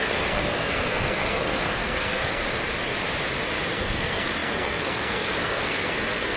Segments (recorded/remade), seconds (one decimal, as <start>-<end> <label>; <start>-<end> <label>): 0.0-2.4 remade; 2.4-3.7 recorded; 3.7-6.4 remade